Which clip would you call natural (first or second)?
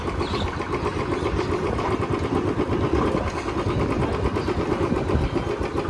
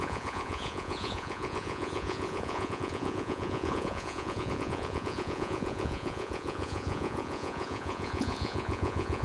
first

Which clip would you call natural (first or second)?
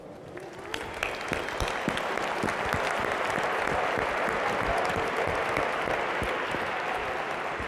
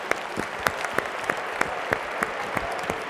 first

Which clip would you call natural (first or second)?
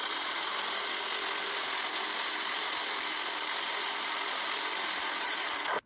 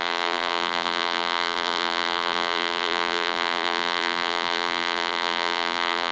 first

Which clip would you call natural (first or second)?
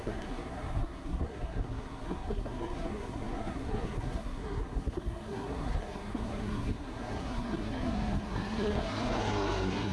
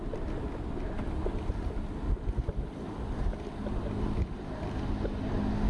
second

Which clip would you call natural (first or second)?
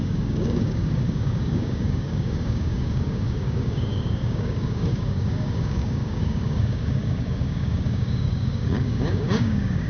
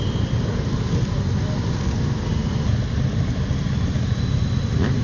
second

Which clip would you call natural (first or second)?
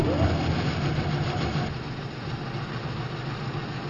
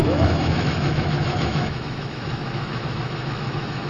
first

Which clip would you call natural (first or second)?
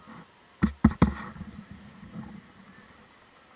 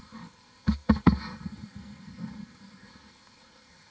first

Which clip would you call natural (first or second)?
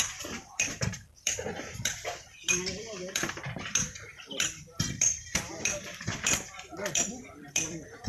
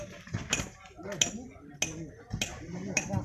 second